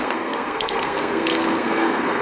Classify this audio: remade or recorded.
remade